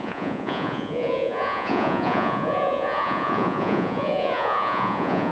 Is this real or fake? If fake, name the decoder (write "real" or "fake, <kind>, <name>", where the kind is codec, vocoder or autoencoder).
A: fake, vocoder, Vocos